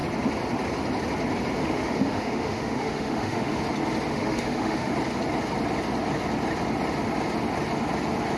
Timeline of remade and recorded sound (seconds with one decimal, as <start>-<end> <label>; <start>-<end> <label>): 0.0-1.6 recorded; 1.6-3.6 remade; 3.6-4.1 recorded; 4.1-4.9 remade; 4.9-8.4 recorded